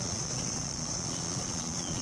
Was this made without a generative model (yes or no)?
no